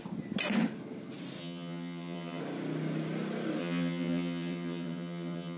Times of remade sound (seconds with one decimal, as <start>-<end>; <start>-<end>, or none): 1.4-2.4; 3.6-5.6